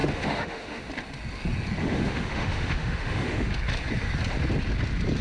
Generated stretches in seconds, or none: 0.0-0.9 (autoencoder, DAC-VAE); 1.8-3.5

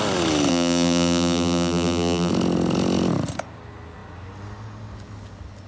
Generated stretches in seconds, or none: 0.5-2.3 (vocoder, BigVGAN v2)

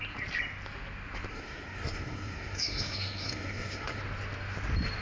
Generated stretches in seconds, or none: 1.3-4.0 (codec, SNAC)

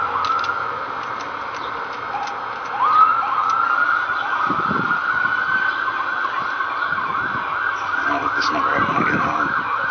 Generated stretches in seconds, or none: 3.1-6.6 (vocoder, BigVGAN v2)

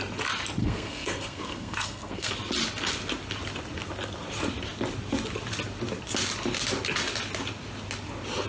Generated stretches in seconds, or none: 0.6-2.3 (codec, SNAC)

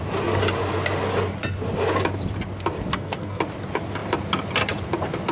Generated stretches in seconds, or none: 2.9-3.4 (codec, SNAC)

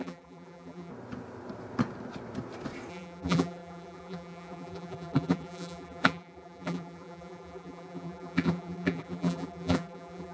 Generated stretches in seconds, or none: 0.0-0.9 (vocoder, BigVGAN v2); 2.9-10.3